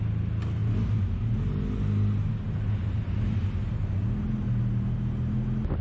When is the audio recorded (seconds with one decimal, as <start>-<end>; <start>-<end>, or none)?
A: 0.0-5.8